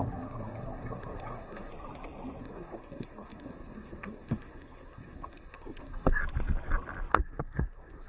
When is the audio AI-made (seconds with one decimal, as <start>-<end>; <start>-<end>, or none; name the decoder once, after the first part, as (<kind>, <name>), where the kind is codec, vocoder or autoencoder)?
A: 0.0-1.7 (codec, SNAC); 2.4-6.2; 7.1-8.1